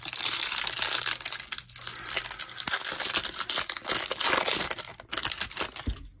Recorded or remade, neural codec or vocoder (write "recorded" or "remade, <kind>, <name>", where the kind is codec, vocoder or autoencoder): recorded